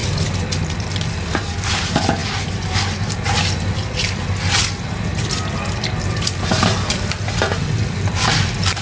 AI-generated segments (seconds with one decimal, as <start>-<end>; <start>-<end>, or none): none

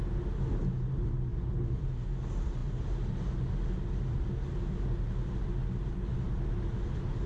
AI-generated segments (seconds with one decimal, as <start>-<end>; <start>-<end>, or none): none

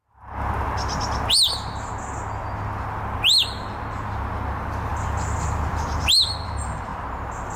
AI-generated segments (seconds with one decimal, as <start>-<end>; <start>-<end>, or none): none

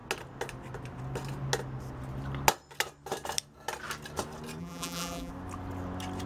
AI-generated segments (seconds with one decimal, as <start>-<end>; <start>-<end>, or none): 4.6-5.3